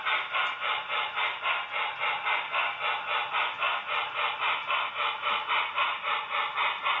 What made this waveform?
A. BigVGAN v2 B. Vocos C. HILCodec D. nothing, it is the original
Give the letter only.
D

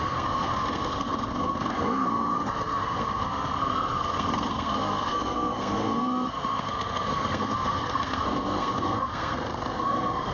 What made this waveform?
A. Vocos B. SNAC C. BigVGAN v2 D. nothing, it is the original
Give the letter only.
B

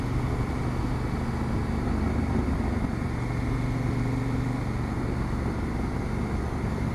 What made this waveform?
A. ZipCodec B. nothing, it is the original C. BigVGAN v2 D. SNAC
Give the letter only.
B